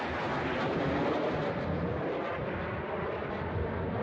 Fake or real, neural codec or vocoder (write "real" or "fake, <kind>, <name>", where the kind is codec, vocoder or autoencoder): real